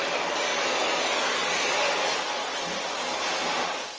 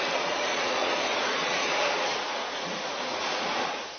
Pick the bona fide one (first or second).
first